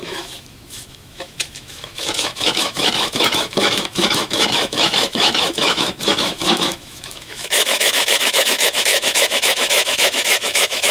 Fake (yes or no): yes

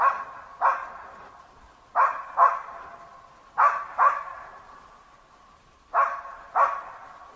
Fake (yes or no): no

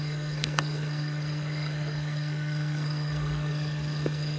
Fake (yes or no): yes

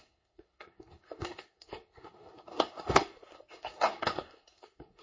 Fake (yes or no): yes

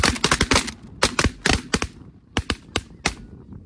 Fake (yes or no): no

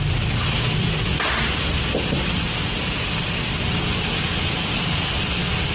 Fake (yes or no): no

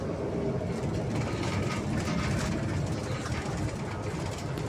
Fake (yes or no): no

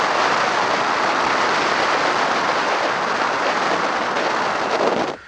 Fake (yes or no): no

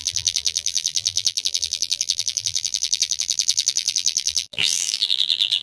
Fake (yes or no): yes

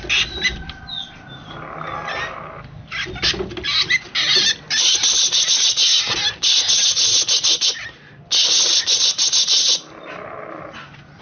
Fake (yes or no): no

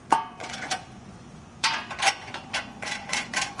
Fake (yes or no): yes